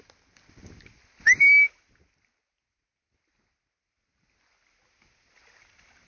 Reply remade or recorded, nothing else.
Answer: recorded